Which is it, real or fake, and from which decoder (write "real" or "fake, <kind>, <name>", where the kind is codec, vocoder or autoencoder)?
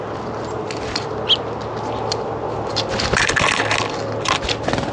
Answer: real